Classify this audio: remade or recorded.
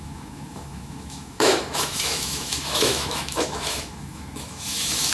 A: remade